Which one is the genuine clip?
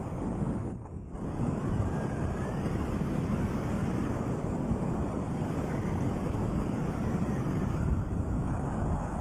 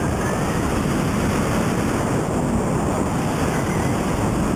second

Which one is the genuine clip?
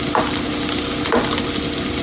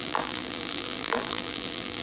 first